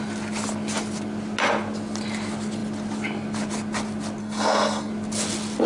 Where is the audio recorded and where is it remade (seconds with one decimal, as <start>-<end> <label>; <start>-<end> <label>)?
0.0-4.2 recorded; 4.2-4.9 remade; 4.9-5.7 recorded